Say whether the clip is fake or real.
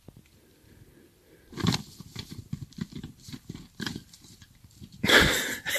fake